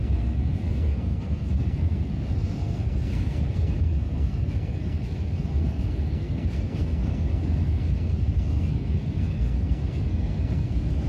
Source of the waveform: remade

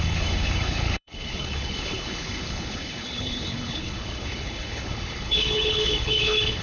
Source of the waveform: remade